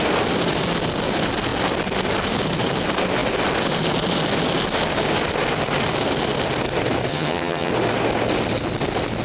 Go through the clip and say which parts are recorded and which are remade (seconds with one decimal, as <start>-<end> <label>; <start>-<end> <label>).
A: 0.0-7.1 recorded; 7.1-7.7 remade; 7.7-9.2 recorded